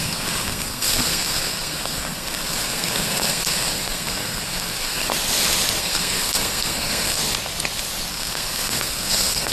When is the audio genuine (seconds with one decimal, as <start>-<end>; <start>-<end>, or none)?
5.1-5.8; 7.2-8.1